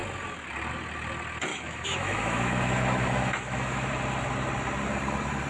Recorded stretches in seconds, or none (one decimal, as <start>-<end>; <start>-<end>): 0.0-1.5; 3.9-5.5